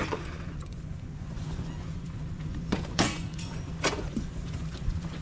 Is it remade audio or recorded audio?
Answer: remade